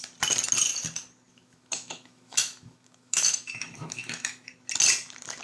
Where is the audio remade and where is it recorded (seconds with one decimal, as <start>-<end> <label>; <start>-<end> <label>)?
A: 0.0-1.3 recorded; 1.3-4.5 remade; 4.5-5.4 recorded